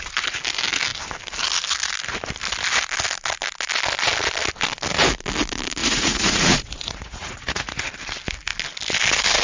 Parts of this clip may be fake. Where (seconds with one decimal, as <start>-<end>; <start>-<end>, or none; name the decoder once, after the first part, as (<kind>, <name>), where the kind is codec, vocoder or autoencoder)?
5.8-7.8 (vocoder, Vocos)